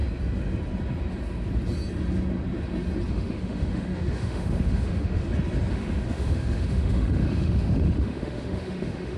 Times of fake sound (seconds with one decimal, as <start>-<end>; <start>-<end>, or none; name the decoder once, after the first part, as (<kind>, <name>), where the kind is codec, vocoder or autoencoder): 3.1-5.2 (autoencoder, DAC-VAE); 5.7-9.2